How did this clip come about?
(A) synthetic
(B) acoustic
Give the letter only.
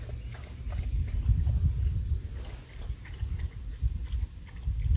B